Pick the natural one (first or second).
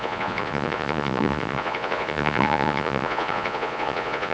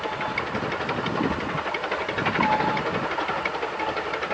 second